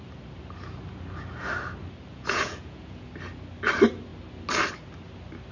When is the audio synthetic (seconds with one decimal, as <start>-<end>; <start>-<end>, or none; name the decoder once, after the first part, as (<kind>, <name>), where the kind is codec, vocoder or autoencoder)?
2.1-3.1 (vocoder, Vocos)